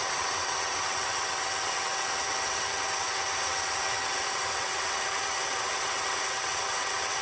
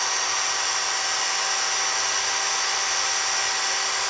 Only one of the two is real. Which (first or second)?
second